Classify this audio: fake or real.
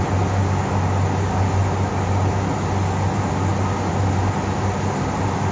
real